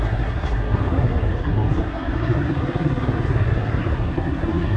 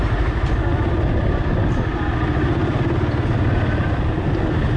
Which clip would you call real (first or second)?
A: second